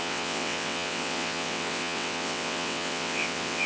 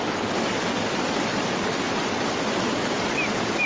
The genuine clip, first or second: second